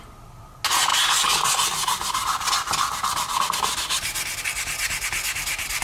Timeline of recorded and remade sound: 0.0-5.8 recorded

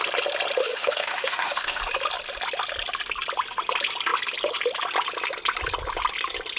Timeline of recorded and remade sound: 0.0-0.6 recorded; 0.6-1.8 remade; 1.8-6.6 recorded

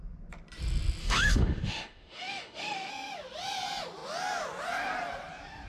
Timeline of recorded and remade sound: 0.0-1.0 recorded; 1.0-2.9 remade; 2.9-5.7 recorded

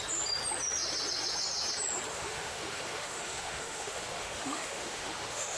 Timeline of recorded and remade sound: 0.0-2.1 recorded; 2.1-5.6 remade

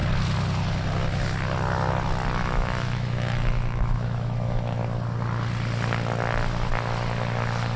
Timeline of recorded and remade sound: 0.0-2.4 recorded; 2.4-4.8 remade; 4.8-7.8 recorded

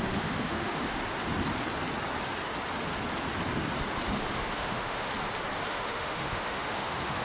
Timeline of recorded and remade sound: 0.0-1.0 remade; 1.0-4.2 recorded; 4.2-5.1 remade; 5.1-5.7 recorded; 5.7-7.2 remade

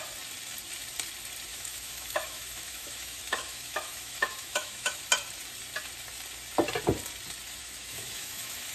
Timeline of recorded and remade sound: 0.0-1.5 recorded; 1.5-5.0 remade; 5.0-7.6 recorded; 7.6-8.7 remade